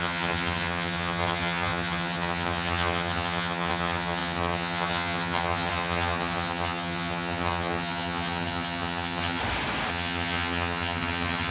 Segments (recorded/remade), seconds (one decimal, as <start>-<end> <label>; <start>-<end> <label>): 0.0-9.4 remade; 9.4-9.9 recorded; 9.9-11.5 remade